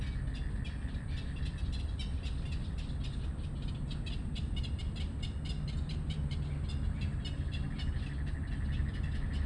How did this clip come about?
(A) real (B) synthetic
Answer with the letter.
A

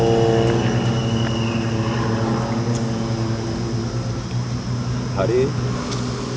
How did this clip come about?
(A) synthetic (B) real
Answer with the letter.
B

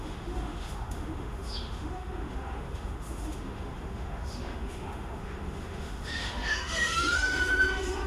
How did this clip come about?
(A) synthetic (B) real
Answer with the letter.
A